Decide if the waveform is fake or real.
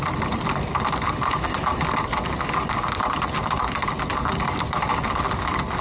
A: real